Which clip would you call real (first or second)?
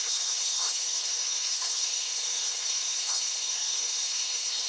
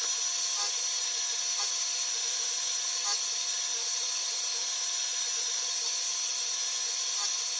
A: second